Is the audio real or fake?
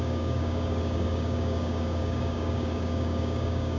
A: fake